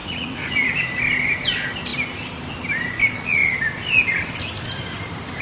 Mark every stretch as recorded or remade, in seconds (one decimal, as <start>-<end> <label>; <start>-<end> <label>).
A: 0.0-0.7 remade; 0.7-5.4 recorded